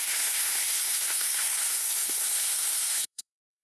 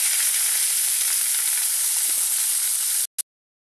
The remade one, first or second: first